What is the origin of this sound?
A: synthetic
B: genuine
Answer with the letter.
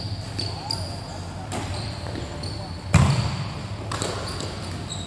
B